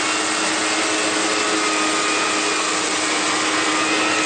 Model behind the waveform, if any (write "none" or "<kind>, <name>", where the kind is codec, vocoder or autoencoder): none